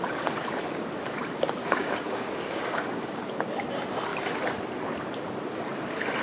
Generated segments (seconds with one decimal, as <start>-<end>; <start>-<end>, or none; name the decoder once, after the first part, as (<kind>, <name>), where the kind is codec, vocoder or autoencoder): 1.6-3.5 (codec, DAC)